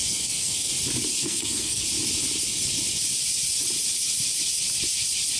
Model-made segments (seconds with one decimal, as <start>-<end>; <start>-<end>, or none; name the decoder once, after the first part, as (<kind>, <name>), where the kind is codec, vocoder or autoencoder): 0.0-0.7 (codec, SNAC); 1.1-1.8